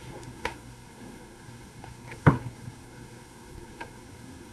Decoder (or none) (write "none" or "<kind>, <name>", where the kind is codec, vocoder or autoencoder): codec, SNAC